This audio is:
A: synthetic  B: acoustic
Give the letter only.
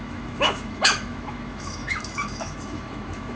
A